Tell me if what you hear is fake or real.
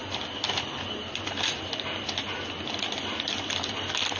real